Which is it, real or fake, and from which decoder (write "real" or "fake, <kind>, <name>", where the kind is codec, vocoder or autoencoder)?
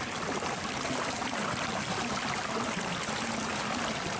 real